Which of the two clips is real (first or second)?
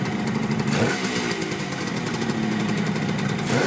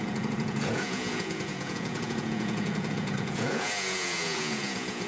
first